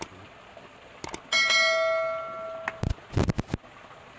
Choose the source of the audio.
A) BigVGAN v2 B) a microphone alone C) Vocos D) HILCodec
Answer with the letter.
B